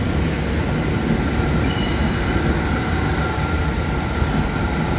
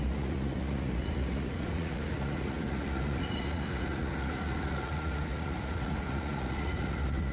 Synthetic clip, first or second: second